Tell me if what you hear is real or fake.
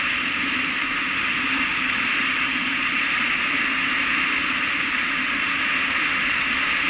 fake